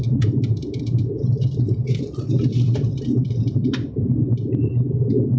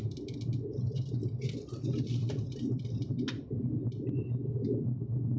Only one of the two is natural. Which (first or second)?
second